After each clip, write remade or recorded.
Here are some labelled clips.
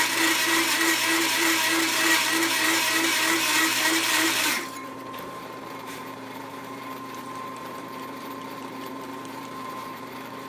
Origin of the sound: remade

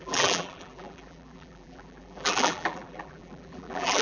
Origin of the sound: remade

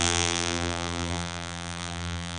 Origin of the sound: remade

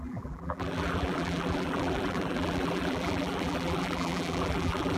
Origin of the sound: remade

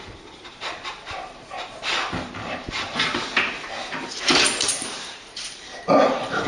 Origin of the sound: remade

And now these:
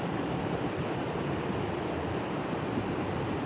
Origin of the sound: remade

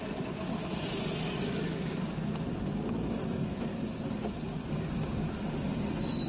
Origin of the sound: recorded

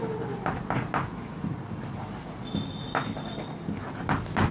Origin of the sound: recorded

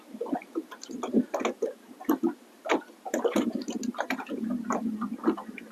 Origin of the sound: remade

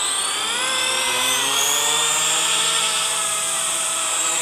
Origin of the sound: remade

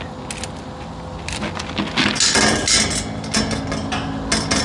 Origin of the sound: recorded